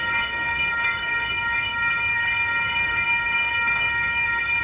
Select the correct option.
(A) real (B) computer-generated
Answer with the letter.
B